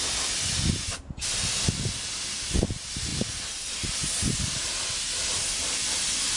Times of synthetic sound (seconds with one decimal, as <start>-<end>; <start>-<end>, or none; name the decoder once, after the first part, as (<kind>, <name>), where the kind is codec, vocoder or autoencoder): none